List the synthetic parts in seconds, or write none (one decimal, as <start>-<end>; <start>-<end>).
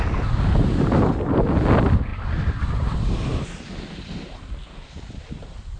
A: none